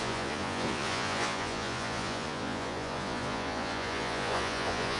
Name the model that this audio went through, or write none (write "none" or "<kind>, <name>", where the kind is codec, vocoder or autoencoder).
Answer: vocoder, Vocos